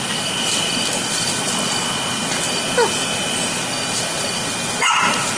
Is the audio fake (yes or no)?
no